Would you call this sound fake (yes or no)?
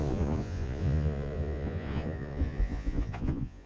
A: yes